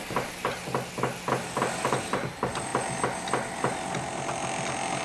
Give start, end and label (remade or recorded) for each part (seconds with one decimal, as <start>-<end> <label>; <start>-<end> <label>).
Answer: 0.0-5.0 recorded